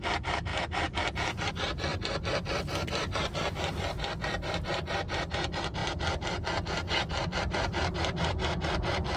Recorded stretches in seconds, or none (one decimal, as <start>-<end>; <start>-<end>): 5.8-7.4